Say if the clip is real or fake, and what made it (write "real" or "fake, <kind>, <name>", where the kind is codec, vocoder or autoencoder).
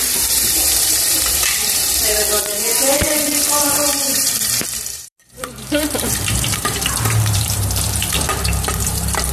fake, vocoder, BigVGAN v2